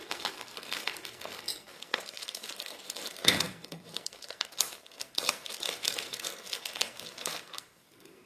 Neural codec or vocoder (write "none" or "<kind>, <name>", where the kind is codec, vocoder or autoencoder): codec, SNAC